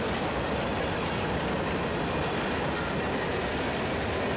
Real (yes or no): yes